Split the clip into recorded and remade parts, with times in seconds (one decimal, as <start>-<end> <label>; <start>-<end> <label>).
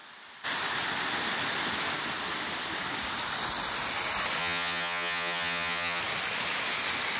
0.0-4.4 recorded; 4.4-6.0 remade; 6.0-7.2 recorded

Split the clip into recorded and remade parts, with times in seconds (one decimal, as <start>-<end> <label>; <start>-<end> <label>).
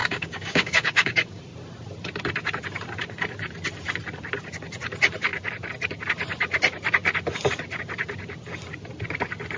0.0-1.4 remade; 1.4-9.6 recorded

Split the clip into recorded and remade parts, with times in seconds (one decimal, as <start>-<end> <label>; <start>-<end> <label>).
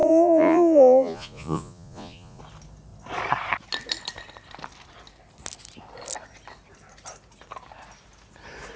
0.0-2.4 remade; 2.4-8.8 recorded